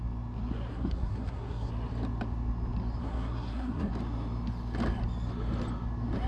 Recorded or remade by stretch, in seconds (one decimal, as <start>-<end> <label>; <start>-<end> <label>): 0.0-0.7 recorded; 0.7-1.7 remade; 1.7-3.0 recorded; 3.0-3.9 remade; 3.9-6.3 recorded